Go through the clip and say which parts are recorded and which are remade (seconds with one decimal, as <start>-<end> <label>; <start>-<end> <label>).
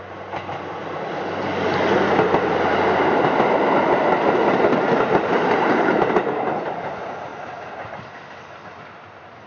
0.0-9.5 recorded